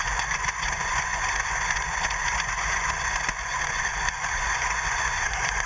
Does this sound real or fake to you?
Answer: fake